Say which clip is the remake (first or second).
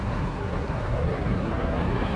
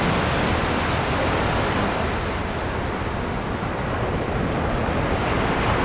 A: first